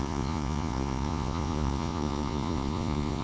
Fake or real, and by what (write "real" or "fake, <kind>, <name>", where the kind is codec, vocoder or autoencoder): fake, vocoder, Vocos